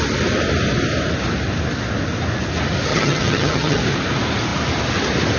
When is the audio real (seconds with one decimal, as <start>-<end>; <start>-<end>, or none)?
0.0-2.9; 3.8-5.4